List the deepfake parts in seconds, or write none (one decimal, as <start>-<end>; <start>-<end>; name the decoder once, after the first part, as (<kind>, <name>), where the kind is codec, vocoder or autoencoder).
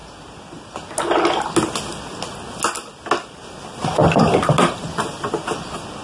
none